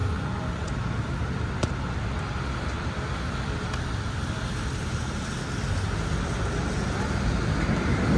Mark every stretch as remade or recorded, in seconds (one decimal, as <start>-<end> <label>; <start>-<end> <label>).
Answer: 0.0-0.7 remade; 0.7-8.2 recorded